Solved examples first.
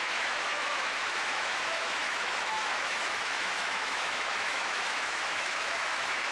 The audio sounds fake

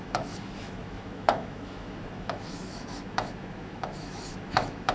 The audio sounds fake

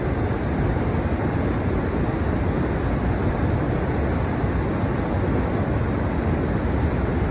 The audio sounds real